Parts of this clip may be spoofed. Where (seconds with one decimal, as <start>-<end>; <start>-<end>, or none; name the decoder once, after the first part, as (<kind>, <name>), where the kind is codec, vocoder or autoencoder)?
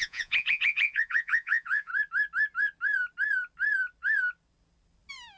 0.0-1.9 (vocoder, Vocos)